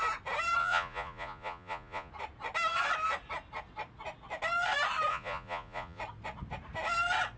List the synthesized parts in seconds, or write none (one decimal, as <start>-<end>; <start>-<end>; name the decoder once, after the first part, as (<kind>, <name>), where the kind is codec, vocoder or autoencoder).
0.6-2.1 (vocoder, Vocos); 5.1-6.0